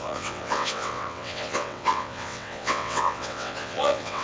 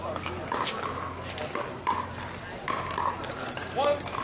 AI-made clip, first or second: first